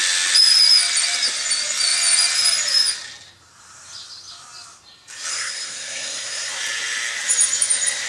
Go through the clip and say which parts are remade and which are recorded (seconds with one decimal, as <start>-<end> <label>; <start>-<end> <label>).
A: 0.0-5.3 recorded; 5.3-6.5 remade; 6.5-8.1 recorded